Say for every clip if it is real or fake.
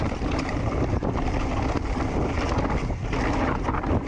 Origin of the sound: real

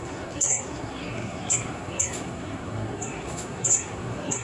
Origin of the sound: fake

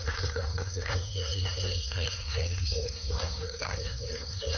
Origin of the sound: fake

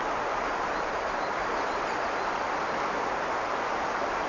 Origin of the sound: real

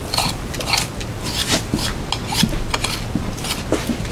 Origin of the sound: real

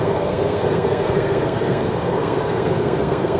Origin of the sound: fake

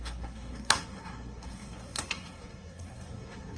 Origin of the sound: fake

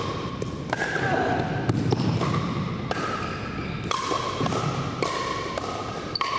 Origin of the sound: real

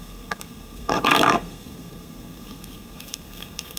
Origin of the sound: fake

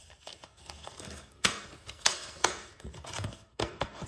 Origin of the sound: fake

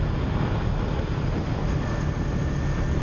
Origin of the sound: real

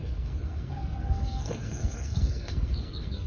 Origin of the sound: fake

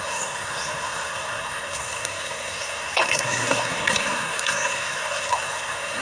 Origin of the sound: fake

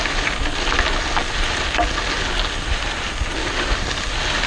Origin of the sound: real